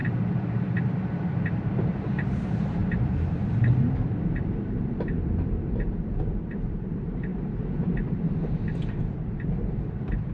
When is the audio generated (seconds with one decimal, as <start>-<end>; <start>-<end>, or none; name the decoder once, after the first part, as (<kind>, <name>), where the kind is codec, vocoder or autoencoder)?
0.8-10.3 (vocoder, BigVGAN v2)